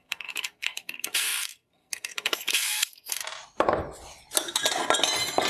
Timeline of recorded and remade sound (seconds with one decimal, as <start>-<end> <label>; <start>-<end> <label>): 0.0-3.2 remade; 3.2-5.5 recorded